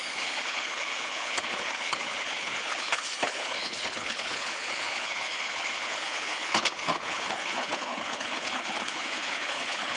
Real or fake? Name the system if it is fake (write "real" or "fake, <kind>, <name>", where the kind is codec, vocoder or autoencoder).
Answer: fake, codec, HILCodec